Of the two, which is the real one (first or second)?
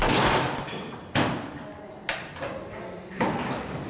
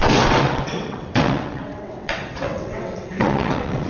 first